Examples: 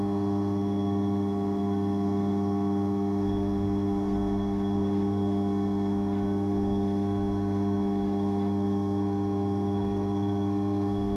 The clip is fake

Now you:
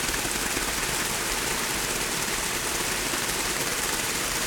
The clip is real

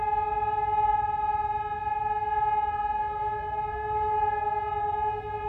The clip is real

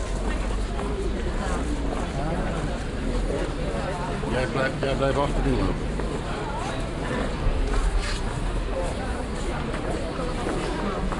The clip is real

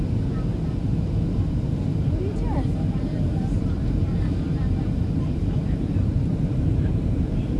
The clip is fake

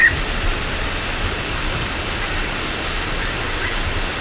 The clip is real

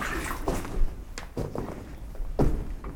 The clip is real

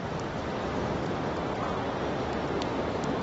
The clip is real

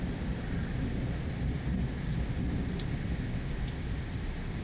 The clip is real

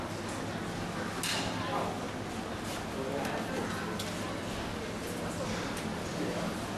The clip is real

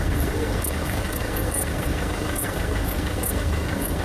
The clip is fake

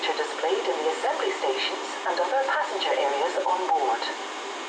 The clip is real